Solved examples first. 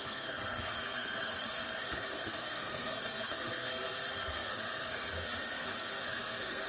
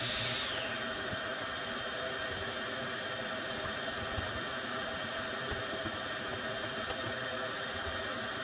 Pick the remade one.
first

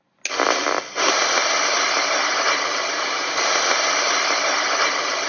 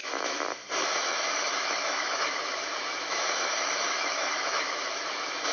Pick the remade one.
second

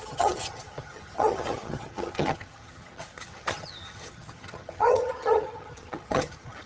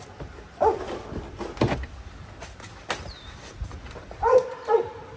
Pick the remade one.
first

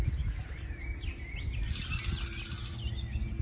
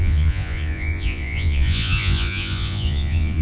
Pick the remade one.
second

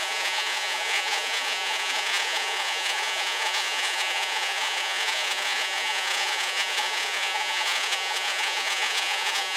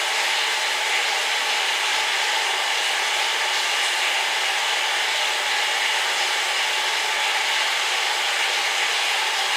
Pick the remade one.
first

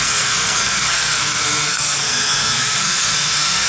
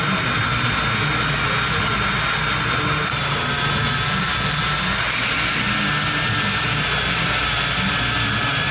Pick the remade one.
first